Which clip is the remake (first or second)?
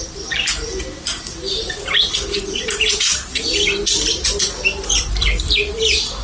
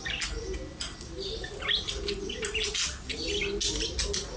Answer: first